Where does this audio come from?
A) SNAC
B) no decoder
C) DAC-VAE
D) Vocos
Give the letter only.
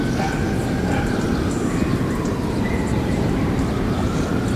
B